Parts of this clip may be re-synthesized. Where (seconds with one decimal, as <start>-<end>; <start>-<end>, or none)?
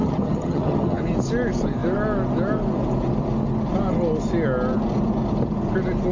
0.0-1.0